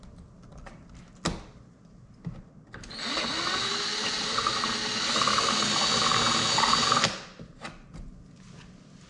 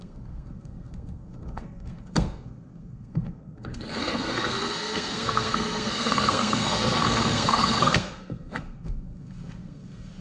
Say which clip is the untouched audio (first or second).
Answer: first